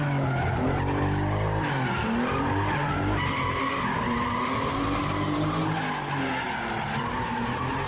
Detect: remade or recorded recorded